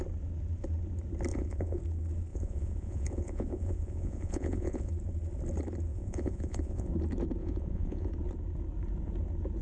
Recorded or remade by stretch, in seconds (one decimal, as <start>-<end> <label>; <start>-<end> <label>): 0.0-1.3 recorded; 1.3-1.8 remade; 1.8-2.3 recorded; 2.3-4.9 remade; 4.9-5.9 recorded; 5.9-6.9 remade; 6.9-7.4 recorded; 7.4-8.1 remade; 8.1-9.6 recorded